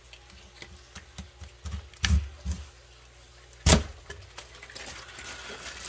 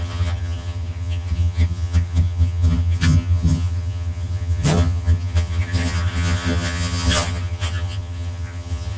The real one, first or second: first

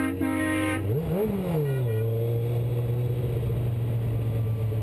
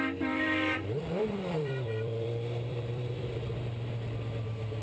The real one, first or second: first